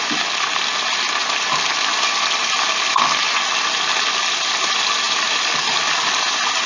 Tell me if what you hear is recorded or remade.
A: recorded